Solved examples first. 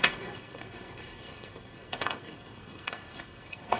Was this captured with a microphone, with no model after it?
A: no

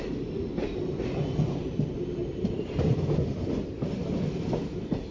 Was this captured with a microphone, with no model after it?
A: yes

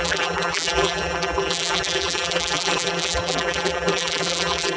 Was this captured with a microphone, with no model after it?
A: no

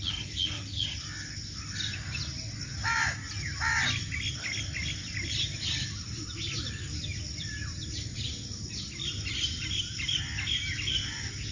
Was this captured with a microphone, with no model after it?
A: yes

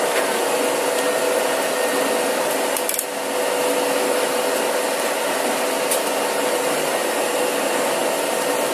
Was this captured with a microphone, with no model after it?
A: yes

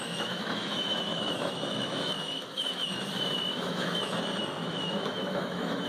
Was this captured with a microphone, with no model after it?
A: no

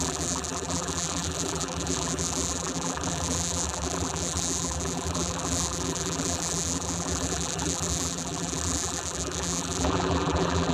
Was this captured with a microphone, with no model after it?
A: no